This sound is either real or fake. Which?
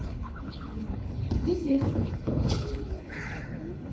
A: fake